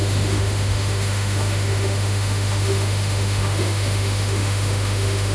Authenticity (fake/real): fake